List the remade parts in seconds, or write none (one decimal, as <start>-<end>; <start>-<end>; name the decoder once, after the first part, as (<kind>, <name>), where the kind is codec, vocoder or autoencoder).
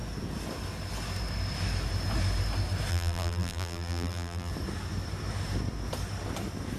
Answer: 2.9-4.5 (vocoder, BigVGAN v2)